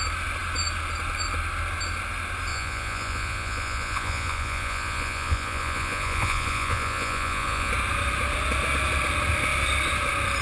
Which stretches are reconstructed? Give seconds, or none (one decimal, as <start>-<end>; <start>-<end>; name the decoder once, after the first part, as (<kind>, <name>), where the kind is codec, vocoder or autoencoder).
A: 2.5-7.7 (vocoder, Vocos)